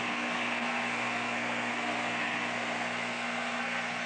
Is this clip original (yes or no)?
no